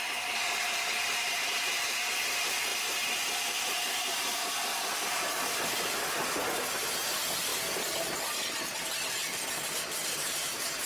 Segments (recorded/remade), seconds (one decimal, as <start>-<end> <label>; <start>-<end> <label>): 0.0-2.7 recorded; 2.7-6.7 remade; 6.7-7.5 recorded; 7.5-8.5 remade; 8.5-9.2 recorded; 9.2-9.8 remade; 9.8-10.9 recorded